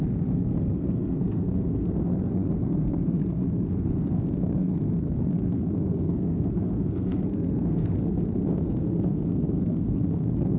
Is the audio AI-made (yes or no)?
yes